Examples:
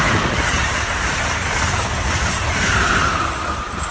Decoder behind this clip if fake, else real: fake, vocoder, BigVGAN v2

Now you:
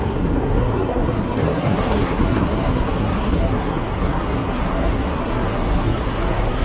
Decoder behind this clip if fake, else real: fake, codec, SNAC